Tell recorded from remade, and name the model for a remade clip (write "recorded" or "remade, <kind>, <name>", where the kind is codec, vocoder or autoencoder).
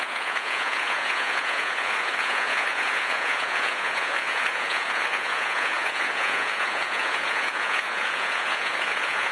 remade, vocoder, Vocos